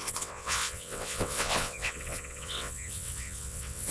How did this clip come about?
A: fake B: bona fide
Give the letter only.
A